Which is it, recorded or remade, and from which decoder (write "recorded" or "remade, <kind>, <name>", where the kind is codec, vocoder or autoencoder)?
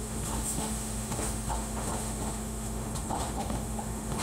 remade, autoencoder, DAC-VAE